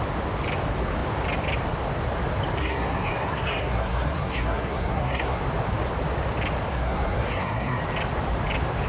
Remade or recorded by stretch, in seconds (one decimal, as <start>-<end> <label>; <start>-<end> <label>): 0.0-2.6 recorded; 2.6-5.4 remade; 5.4-6.7 recorded; 6.7-7.8 remade; 7.8-8.9 recorded